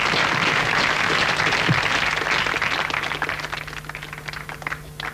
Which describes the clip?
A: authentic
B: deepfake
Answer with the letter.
A